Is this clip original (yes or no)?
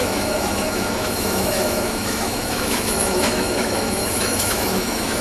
no